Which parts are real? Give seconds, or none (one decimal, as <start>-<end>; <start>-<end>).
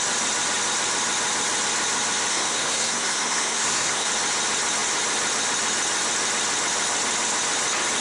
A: 0.0-2.3; 4.1-8.0